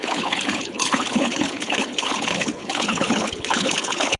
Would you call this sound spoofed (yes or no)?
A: yes